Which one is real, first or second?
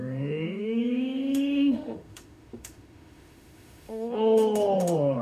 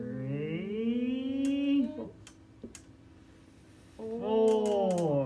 second